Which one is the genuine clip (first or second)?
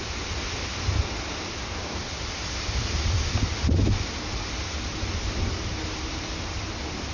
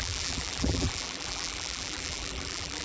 first